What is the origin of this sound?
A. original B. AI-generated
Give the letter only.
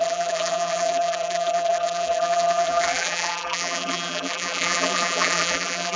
B